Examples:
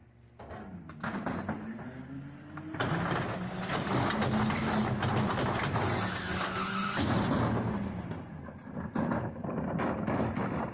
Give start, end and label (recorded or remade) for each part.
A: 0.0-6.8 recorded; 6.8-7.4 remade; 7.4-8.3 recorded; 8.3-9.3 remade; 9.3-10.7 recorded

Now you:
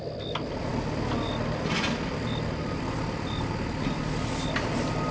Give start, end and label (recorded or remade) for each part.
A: 0.0-5.1 recorded

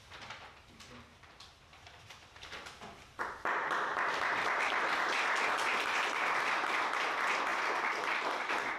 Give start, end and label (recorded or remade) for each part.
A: 0.0-1.7 recorded; 1.7-6.4 remade; 6.4-7.5 recorded; 7.5-8.4 remade; 8.4-8.8 recorded

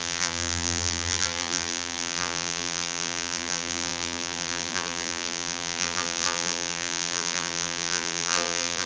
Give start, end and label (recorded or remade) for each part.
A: 0.0-8.9 remade

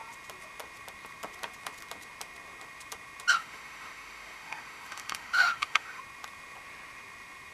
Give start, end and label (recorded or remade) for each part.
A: 0.0-3.3 recorded; 3.3-6.0 remade; 6.0-7.5 recorded